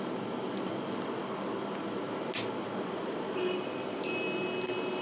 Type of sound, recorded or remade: recorded